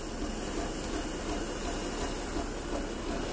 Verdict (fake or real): real